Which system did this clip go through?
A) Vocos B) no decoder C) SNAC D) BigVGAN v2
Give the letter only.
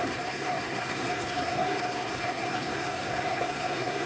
C